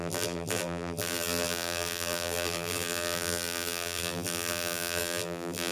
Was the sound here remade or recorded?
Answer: remade